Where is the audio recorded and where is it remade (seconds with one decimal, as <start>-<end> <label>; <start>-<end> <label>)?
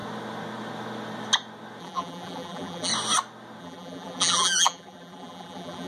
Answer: 0.0-1.8 recorded; 1.8-2.9 remade; 2.9-3.6 recorded; 3.6-5.9 remade